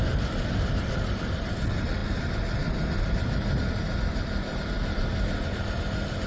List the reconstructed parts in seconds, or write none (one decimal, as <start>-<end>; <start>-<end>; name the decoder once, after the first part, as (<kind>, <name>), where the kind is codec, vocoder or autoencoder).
none